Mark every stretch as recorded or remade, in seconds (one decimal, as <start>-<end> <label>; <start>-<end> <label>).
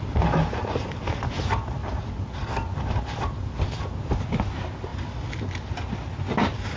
0.0-0.6 recorded; 0.6-1.4 remade; 1.4-1.8 recorded; 1.8-2.5 remade; 2.5-4.9 recorded; 4.9-5.5 remade; 5.5-6.8 recorded